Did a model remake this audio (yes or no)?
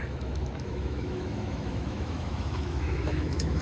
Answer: yes